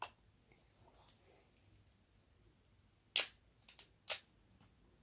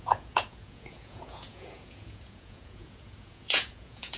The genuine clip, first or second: first